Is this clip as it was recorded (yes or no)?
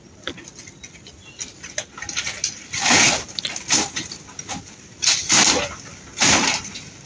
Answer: yes